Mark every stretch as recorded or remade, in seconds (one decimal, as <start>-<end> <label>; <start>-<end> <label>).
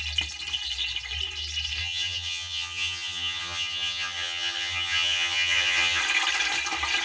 0.0-1.8 recorded; 1.8-6.0 remade; 6.0-7.0 recorded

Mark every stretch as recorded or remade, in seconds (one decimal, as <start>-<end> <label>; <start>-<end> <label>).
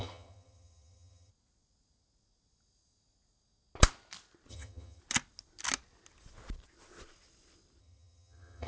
0.0-1.3 remade; 1.3-4.5 recorded; 4.5-5.0 remade; 5.0-7.8 recorded; 7.8-8.7 remade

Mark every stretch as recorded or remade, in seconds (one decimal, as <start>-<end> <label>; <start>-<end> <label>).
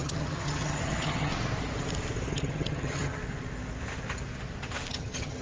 0.0-1.3 remade; 1.3-2.3 recorded; 2.3-3.2 remade; 3.2-4.9 recorded; 4.9-5.4 remade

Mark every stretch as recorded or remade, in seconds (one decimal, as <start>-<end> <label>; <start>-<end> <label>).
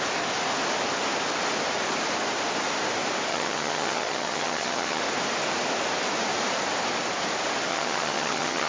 0.0-3.3 recorded; 3.3-5.0 remade; 5.0-7.7 recorded; 7.7-8.7 remade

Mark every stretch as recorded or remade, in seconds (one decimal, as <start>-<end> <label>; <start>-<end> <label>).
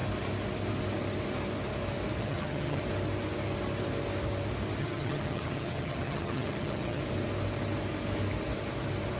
0.0-2.2 recorded; 2.2-2.8 remade; 2.8-4.8 recorded; 4.8-7.0 remade; 7.0-9.2 recorded